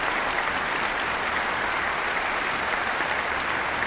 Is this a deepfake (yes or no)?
no